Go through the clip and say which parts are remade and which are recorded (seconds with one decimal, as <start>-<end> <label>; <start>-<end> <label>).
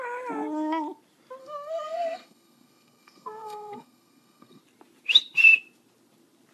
0.0-1.4 recorded; 1.4-4.6 remade; 4.6-6.5 recorded